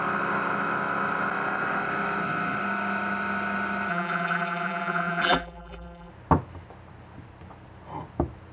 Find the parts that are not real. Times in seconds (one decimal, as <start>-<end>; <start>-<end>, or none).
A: 3.9-6.1